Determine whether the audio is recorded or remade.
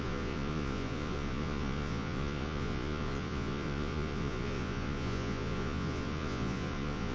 remade